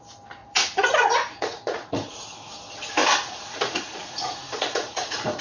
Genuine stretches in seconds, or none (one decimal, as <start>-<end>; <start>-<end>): 0.0-0.4; 2.5-3.0